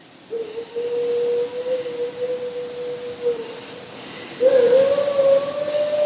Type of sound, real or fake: real